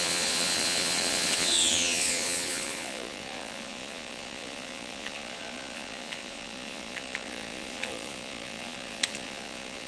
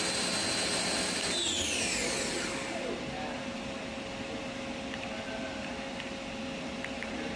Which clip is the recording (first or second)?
second